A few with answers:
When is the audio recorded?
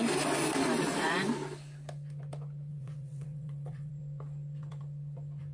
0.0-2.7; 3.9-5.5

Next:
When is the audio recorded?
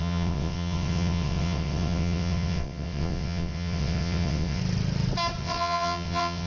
4.6-5.4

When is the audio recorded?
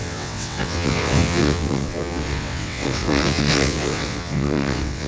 none